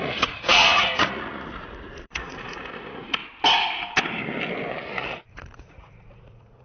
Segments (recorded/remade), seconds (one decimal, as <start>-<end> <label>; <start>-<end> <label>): 0.0-3.2 remade; 3.2-4.7 recorded; 4.7-6.6 remade